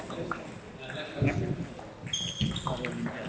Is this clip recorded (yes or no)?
yes